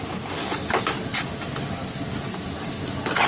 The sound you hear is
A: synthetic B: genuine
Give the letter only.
B